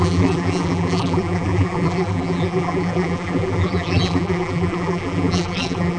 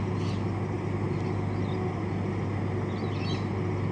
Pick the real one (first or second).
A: second